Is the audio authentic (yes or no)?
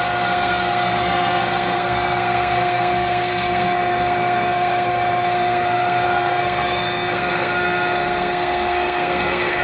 no